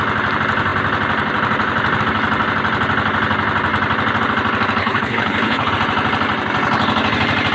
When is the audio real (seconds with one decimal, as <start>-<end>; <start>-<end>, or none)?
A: 0.0-4.8; 5.7-7.5